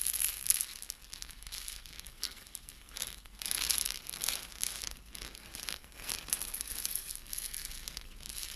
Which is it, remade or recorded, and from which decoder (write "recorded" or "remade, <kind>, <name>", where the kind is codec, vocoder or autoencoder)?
remade, codec, SNAC